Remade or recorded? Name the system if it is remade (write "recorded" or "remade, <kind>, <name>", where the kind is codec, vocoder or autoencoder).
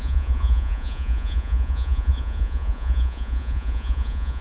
remade, vocoder, Vocos